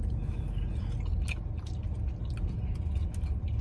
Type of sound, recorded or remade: recorded